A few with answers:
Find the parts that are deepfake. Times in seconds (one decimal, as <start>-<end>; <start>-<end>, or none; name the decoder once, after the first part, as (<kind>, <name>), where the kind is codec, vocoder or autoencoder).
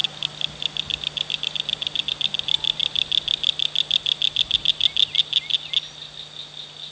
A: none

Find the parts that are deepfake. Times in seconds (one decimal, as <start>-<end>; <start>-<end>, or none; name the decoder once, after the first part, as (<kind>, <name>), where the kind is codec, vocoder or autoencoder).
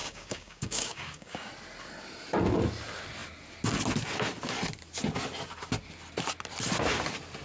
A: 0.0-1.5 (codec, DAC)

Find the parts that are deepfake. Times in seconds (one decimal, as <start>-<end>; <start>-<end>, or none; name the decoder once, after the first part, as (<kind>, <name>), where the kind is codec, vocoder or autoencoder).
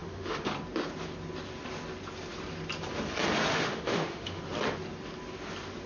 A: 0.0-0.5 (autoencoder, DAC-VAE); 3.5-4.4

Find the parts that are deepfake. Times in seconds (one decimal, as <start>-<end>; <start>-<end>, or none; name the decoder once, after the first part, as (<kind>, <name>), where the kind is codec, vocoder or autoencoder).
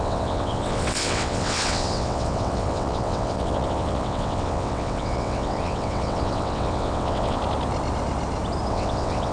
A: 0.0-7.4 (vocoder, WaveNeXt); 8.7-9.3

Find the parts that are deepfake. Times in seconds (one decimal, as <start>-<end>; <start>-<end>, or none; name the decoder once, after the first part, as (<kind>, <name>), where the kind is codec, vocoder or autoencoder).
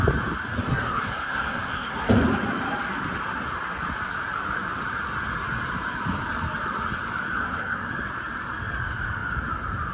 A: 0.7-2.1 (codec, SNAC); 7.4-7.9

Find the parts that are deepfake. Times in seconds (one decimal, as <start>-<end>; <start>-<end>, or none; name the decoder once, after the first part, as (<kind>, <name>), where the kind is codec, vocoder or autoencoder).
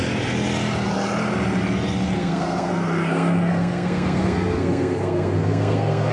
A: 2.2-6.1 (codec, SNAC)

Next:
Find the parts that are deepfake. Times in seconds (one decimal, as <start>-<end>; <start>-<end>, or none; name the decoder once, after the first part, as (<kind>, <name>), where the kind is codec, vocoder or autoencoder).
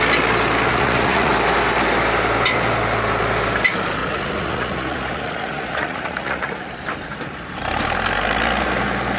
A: 0.7-1.3 (vocoder, Vocos); 4.0-6.7